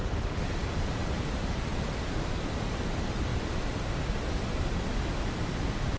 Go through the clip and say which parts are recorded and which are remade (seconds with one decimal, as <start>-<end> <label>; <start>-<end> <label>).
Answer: 0.0-3.3 remade; 3.3-6.0 recorded